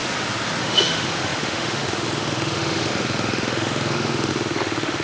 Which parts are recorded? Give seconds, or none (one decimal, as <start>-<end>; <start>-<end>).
0.0-0.6